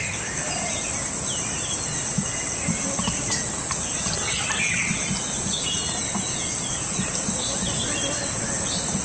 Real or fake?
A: real